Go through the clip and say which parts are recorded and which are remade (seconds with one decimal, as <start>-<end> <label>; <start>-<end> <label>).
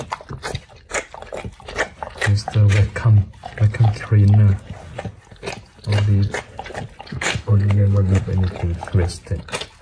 0.0-7.1 recorded; 7.1-8.3 remade; 8.3-9.8 recorded